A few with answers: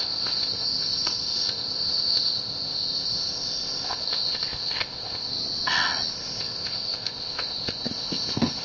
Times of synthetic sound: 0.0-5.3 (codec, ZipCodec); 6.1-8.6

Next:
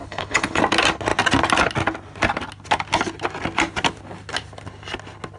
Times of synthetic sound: 0.0-0.6 (codec, HILCodec)

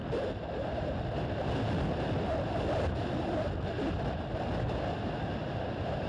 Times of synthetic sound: none

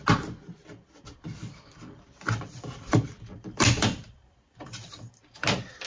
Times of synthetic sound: 1.4-4.9 (vocoder, BigVGAN v2)

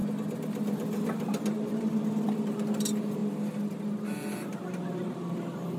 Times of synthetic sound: none